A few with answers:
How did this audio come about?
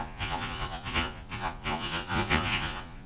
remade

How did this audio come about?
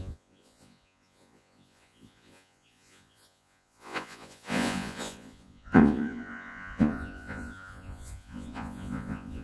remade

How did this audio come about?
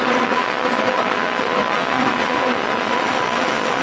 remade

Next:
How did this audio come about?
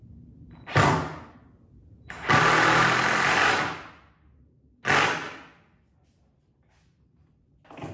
recorded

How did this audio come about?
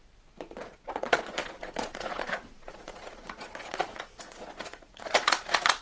remade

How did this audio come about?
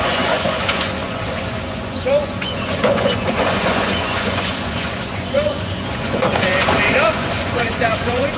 remade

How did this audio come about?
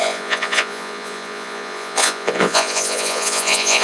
remade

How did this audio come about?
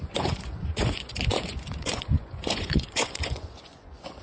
remade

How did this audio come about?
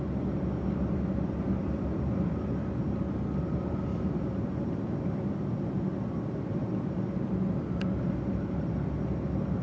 recorded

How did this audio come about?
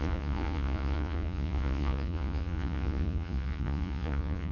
remade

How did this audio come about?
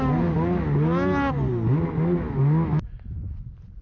recorded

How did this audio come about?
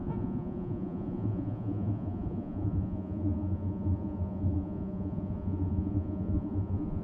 remade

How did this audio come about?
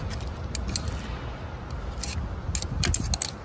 recorded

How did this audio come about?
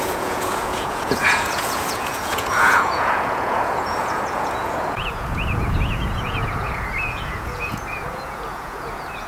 remade